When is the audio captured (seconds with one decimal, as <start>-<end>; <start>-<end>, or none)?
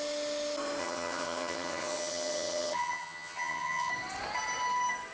0.0-0.8; 3.9-5.1